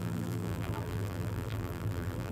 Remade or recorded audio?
remade